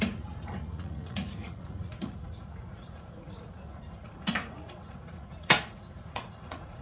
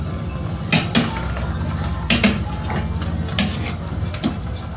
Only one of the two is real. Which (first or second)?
second